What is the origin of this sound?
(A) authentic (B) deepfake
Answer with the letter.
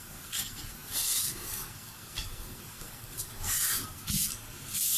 B